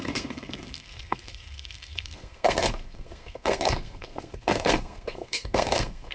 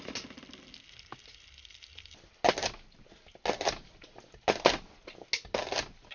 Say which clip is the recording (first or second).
second